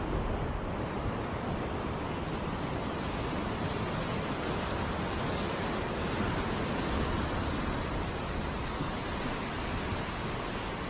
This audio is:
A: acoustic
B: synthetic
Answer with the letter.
A